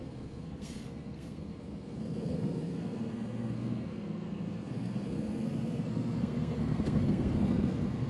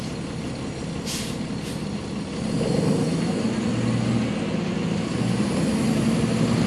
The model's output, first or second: first